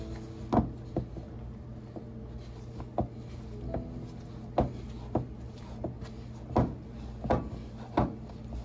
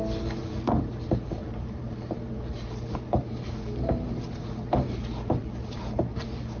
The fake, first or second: second